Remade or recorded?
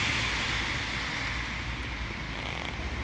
recorded